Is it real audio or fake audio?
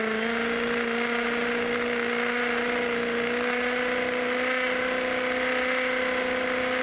real